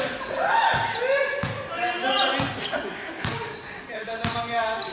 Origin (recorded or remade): recorded